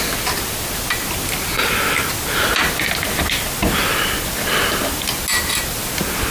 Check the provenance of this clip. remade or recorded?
recorded